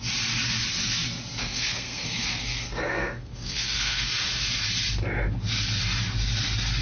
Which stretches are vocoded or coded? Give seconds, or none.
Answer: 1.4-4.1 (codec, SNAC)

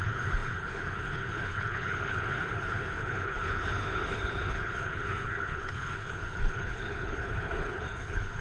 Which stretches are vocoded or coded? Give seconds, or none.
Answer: 0.0-8.4 (codec, HILCodec)